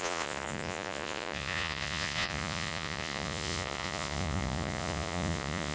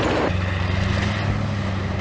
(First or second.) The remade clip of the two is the first